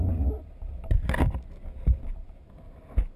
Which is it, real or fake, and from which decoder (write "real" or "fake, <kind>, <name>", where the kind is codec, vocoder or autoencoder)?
real